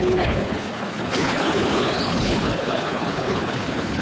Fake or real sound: fake